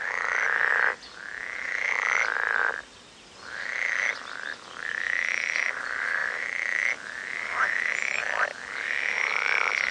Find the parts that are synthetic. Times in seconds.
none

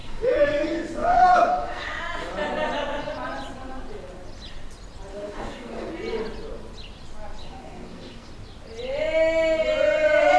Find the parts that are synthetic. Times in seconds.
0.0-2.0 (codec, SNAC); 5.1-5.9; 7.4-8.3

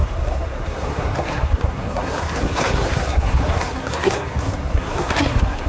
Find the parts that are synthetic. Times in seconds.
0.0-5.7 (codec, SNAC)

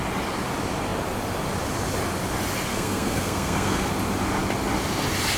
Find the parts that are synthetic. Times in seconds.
2.7-3.9 (codec, SNAC)